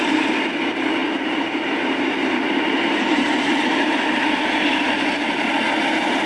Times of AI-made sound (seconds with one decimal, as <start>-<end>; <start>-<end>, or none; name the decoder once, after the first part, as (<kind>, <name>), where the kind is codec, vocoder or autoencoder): 1.0-4.0 (vocoder, BigVGAN v2)